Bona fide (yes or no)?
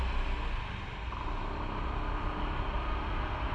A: yes